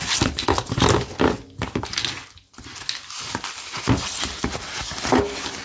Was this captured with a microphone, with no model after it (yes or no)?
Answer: yes